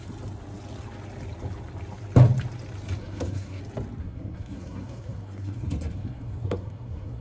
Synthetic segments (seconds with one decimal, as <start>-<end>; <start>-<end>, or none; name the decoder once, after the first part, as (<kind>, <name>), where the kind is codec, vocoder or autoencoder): 3.0-3.6 (codec, SNAC); 4.0-7.2